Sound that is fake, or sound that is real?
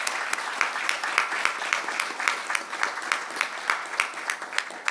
real